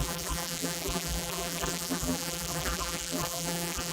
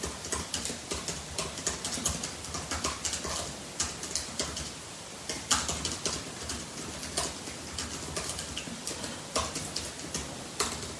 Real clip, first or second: second